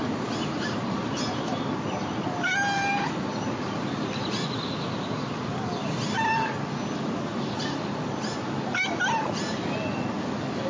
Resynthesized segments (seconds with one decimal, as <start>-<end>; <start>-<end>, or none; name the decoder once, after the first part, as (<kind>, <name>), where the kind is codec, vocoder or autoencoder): 7.3-8.7 (vocoder, BigVGAN v2)